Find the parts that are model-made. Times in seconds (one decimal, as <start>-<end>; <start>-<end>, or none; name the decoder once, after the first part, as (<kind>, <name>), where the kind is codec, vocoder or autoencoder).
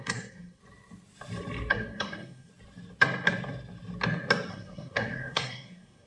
0.0-0.6 (codec, SNAC); 1.7-2.5; 4.5-6.1